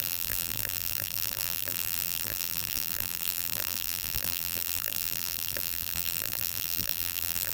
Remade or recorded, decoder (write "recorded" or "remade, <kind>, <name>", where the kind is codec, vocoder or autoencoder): remade, vocoder, BigVGAN v2